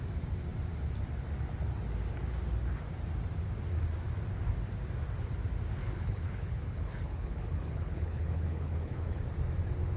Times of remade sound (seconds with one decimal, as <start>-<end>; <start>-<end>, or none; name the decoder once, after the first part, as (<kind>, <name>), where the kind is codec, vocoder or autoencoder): 5.8-9.2 (codec, HILCodec)